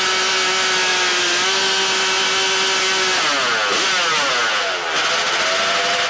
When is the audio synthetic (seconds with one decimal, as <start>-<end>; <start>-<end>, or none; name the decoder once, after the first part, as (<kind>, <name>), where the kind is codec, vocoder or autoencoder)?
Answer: none

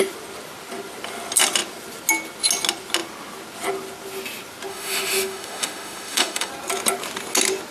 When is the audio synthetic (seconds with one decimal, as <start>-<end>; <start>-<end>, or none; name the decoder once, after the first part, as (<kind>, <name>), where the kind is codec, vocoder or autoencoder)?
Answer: 4.7-6.5 (autoencoder, DAC-VAE)

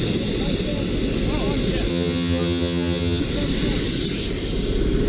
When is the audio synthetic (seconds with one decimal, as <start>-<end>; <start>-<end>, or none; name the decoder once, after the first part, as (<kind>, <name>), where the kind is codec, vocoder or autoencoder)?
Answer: 1.9-3.2 (vocoder, HiFi-GAN)

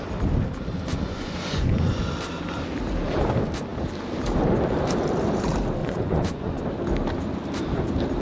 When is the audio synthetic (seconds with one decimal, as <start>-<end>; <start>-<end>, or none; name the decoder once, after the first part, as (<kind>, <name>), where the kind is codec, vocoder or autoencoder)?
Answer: 0.7-2.0 (vocoder, Vocos); 5.8-6.6

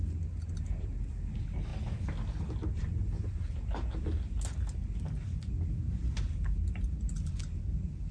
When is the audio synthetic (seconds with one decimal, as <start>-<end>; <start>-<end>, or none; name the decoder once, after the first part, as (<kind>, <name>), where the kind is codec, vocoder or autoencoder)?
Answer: none

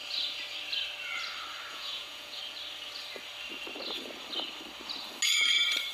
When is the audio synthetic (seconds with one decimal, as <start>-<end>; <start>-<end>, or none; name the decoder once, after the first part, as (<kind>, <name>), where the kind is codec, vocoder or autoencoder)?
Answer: 1.7-2.4 (vocoder, Vocos)

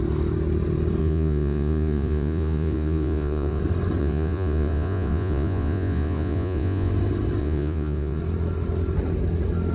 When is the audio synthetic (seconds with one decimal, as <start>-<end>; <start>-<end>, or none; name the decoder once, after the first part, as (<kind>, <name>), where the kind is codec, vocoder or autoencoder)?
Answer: 1.0-3.6 (vocoder, Vocos); 4.0-6.9; 7.4-8.2